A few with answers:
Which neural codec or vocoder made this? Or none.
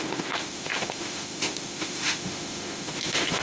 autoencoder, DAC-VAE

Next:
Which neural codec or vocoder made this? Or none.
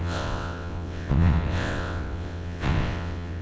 vocoder, WaveNeXt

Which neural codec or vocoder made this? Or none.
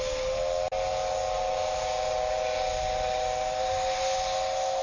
none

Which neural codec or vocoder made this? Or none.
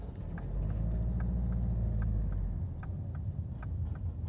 none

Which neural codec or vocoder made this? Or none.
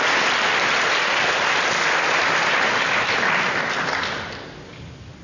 none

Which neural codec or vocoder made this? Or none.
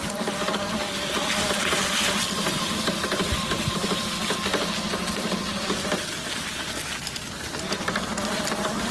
none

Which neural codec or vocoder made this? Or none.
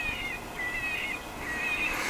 none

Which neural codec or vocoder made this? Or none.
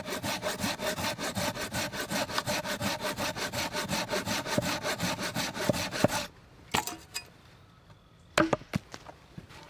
none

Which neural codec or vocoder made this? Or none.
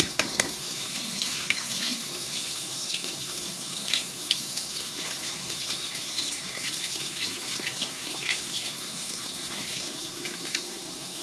codec, SNAC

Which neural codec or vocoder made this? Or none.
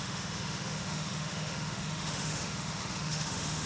autoencoder, DAC-VAE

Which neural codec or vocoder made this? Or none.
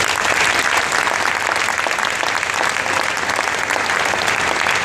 none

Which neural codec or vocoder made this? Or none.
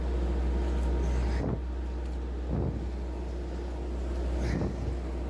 none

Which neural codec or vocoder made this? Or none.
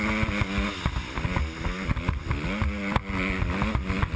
none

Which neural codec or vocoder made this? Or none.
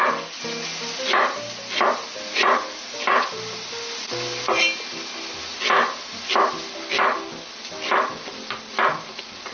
none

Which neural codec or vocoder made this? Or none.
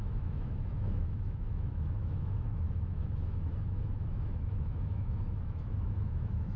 autoencoder, DAC-VAE